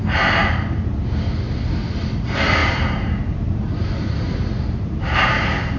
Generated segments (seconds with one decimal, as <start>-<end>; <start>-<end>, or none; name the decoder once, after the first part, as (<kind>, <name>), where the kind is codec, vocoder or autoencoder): 2.6-5.8 (vocoder, BigVGAN v2)